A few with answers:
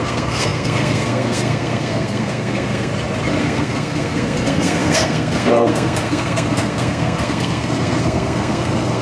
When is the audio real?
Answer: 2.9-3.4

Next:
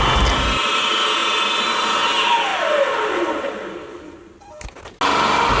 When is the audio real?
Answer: 0.0-5.6

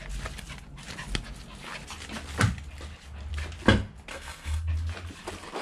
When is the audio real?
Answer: 0.0-4.1; 4.7-5.6

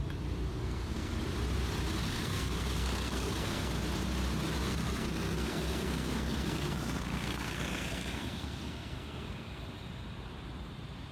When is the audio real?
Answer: 0.0-0.5; 1.2-2.0; 3.7-4.6; 9.6-11.1

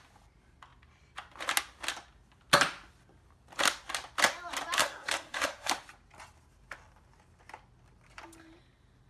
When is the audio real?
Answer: 0.0-4.8; 5.7-9.1

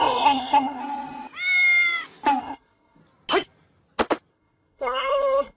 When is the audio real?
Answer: 0.8-2.4; 3.0-4.3

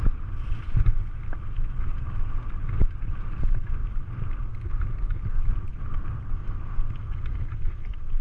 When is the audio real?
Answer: 0.0-8.2

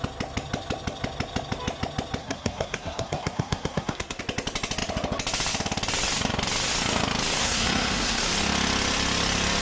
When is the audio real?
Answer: 0.0-2.2; 4.2-7.4; 8.2-9.6